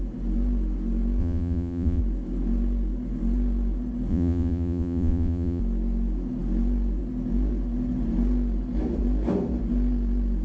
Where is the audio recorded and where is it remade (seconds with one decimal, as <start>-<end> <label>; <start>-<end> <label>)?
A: 0.0-1.2 recorded; 1.2-2.0 remade; 2.0-4.1 recorded; 4.1-5.6 remade; 5.6-10.4 recorded